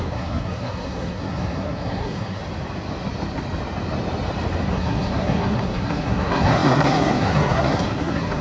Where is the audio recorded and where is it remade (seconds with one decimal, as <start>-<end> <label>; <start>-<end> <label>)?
0.0-2.4 remade; 2.4-4.7 recorded; 4.7-8.4 remade

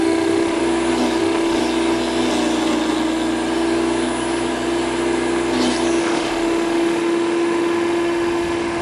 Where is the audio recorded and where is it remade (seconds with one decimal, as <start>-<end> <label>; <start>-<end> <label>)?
0.0-0.6 remade; 0.6-1.2 recorded; 1.2-1.6 remade; 1.6-6.0 recorded; 6.0-8.8 remade

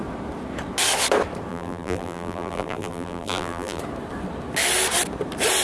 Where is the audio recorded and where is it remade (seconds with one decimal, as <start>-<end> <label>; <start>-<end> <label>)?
0.0-1.5 recorded; 1.5-3.8 remade; 3.8-5.6 recorded